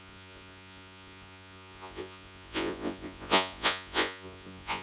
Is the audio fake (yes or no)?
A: yes